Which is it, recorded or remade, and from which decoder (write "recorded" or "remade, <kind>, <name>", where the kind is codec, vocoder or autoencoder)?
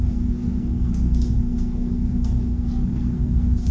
remade, codec, SNAC